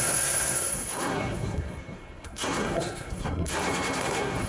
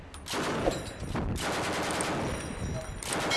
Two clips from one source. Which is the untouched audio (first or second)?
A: second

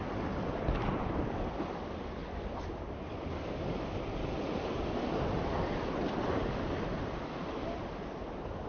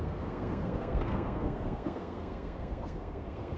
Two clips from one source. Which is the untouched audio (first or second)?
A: first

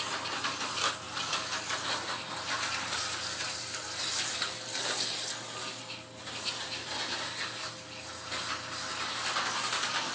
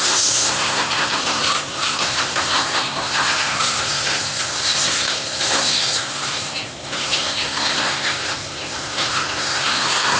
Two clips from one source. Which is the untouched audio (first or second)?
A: first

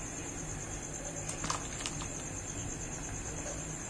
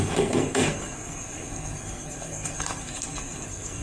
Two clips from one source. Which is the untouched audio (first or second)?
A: first